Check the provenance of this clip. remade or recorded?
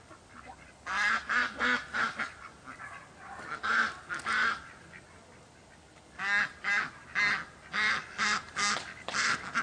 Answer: recorded